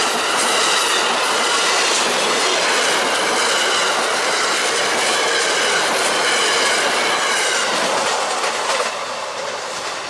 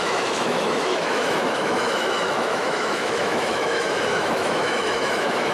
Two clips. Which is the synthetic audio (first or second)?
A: second